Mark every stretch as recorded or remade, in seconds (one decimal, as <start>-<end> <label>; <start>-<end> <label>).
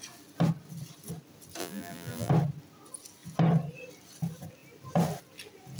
0.0-1.6 recorded; 1.6-2.3 remade; 2.3-5.8 recorded